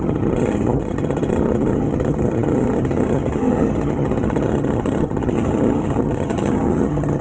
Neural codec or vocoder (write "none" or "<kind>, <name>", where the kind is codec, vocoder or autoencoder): vocoder, HiFi-GAN